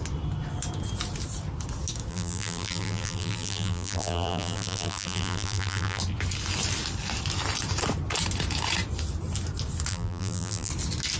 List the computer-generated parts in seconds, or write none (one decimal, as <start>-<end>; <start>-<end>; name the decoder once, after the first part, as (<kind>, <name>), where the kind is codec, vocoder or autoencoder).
2.1-6.0 (vocoder, BigVGAN v2); 9.9-10.7